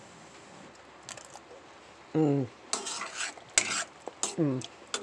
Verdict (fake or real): real